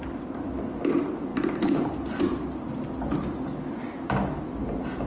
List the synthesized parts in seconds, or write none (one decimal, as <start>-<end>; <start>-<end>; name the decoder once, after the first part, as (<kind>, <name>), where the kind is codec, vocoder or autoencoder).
none